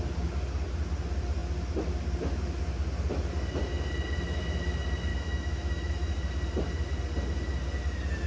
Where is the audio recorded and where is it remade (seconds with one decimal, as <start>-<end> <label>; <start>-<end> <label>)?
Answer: 0.0-5.1 recorded; 5.1-6.1 remade; 6.1-8.3 recorded